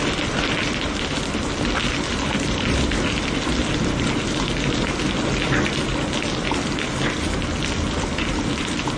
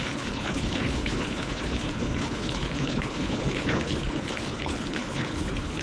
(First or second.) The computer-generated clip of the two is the second